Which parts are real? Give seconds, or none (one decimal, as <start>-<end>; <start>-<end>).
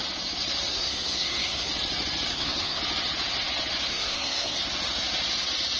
0.0-0.7; 1.7-2.3; 2.8-3.9; 4.6-5.8